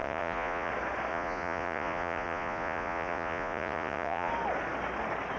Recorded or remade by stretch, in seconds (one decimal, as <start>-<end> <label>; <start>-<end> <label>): 0.0-0.7 remade; 0.7-1.1 recorded; 1.1-4.3 remade; 4.3-5.4 recorded